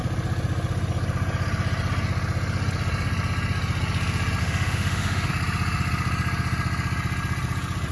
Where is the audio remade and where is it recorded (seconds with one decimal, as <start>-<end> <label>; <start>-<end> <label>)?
0.0-4.4 recorded; 4.4-5.3 remade; 5.3-7.9 recorded